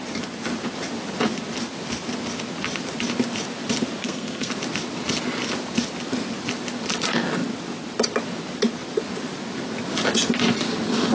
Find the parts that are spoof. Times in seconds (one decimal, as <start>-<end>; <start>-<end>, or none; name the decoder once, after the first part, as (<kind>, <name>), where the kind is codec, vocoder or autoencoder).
4.0-4.5 (codec, SNAC)